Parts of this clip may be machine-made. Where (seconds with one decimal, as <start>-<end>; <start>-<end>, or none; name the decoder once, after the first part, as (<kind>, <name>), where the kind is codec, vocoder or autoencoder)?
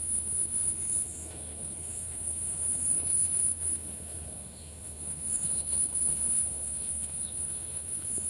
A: 0.0-8.3 (autoencoder, DAC-VAE)